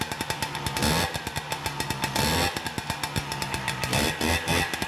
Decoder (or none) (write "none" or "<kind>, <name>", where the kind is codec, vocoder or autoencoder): none